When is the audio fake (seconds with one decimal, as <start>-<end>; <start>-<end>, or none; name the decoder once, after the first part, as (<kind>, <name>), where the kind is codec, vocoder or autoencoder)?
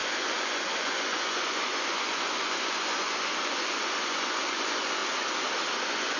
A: 0.0-5.0 (vocoder, Vocos); 5.7-6.2